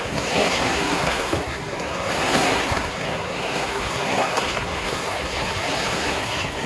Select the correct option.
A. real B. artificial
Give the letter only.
B